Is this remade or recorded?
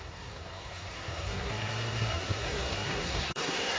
remade